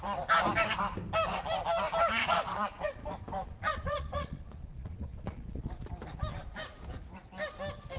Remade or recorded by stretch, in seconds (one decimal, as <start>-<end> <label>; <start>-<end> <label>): 0.0-2.2 recorded; 2.2-2.8 remade; 2.8-3.4 recorded; 3.4-5.8 remade; 5.8-8.0 recorded